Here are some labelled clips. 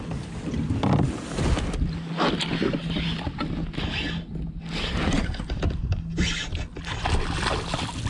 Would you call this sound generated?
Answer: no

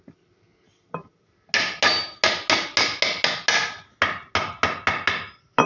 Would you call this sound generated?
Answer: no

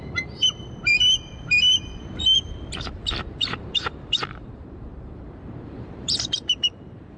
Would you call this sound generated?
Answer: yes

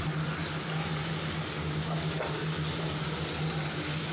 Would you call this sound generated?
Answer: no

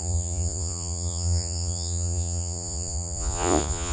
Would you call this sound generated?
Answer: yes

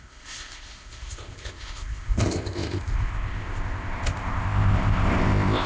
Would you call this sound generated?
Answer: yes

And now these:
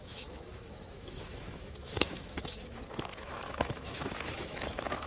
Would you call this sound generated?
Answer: yes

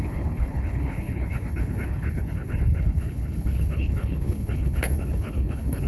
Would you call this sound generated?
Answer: yes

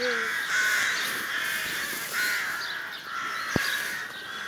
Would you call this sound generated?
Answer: no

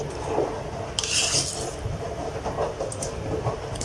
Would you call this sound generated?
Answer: no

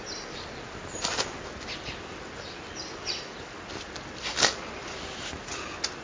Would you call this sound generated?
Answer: no